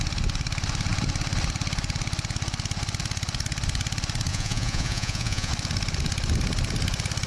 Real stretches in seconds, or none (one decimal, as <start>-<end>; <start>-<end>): 0.0-4.3; 5.5-7.3